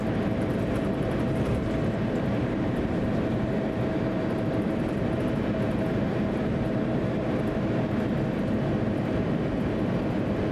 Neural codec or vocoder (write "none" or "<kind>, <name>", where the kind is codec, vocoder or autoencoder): none